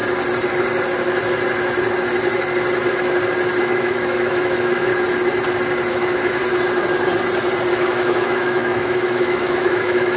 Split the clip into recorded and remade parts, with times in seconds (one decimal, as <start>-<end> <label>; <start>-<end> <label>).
0.0-3.6 recorded; 3.6-4.9 remade; 4.9-5.9 recorded; 5.9-6.4 remade; 6.4-7.7 recorded; 7.7-10.2 remade